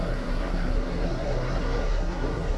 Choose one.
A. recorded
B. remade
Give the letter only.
B